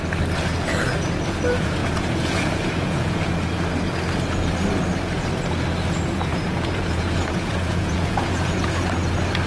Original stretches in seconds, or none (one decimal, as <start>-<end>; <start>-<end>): 0.0-1.8; 3.2-6.3; 8.9-9.5